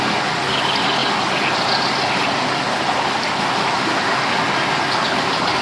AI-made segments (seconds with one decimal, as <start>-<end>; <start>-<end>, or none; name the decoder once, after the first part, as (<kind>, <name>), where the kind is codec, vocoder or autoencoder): none